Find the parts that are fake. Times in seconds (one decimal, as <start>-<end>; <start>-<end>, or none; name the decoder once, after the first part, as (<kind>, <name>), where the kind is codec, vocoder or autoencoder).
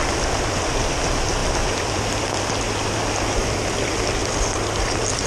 none